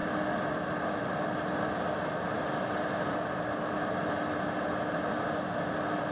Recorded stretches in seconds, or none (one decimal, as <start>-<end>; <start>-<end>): 0.0-6.1